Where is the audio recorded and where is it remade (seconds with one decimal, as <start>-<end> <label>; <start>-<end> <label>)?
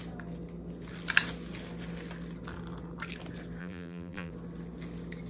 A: 0.0-3.6 recorded; 3.6-4.3 remade; 4.3-5.3 recorded